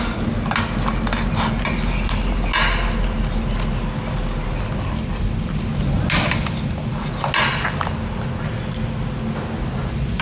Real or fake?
real